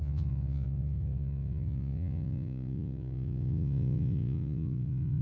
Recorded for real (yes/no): no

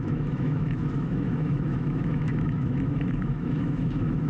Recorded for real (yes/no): no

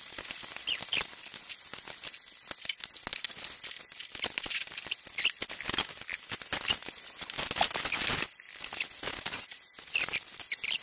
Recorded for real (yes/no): yes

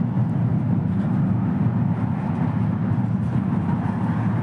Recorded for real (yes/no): no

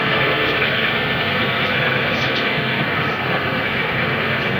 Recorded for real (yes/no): no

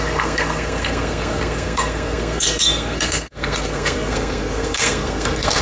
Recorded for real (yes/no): no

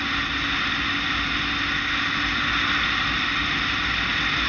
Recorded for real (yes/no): yes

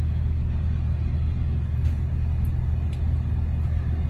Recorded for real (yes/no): yes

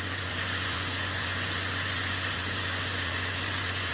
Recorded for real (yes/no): no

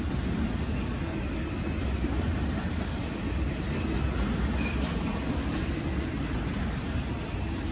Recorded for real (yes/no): yes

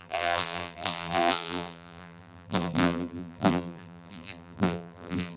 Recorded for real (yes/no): no